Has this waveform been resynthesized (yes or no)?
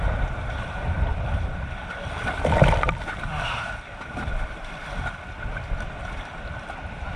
yes